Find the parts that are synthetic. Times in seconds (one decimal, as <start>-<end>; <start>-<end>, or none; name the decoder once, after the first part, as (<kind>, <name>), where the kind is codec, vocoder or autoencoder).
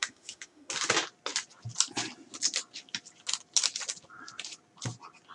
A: 0.0-0.7 (autoencoder, DAC-VAE)